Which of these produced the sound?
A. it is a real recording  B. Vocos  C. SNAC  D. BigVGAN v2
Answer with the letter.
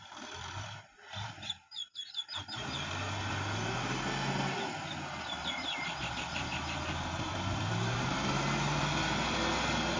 A